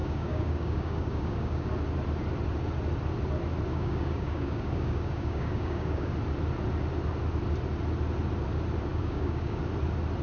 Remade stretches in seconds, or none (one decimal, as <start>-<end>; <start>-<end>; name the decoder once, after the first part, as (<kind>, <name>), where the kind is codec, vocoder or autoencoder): 0.0-1.7 (codec, DAC); 3.7-6.1; 8.9-9.6